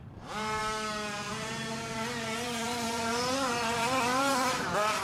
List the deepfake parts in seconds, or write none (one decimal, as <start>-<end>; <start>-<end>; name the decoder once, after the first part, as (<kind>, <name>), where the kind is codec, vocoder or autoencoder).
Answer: 0.0-0.6 (vocoder, BigVGAN v2); 1.3-5.0